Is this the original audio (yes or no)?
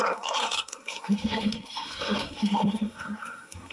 no